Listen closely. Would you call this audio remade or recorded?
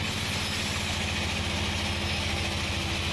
recorded